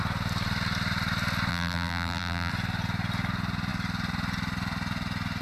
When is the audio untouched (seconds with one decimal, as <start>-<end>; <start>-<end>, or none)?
0.0-1.5; 2.5-5.4